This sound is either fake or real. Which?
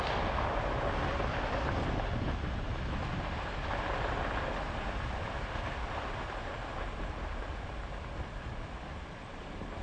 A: real